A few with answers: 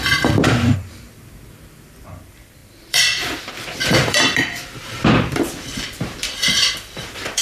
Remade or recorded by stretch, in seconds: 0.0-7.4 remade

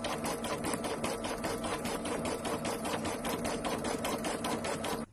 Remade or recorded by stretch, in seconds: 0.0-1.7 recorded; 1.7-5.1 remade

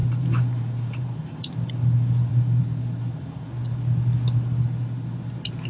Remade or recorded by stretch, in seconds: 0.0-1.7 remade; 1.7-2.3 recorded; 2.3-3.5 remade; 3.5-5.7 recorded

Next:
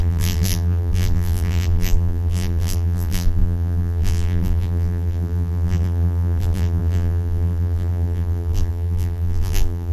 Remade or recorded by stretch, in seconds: 0.0-9.9 remade